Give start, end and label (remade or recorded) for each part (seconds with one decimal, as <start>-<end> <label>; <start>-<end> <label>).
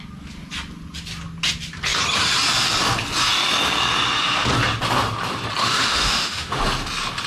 0.0-5.6 recorded; 5.6-6.6 remade; 6.6-7.3 recorded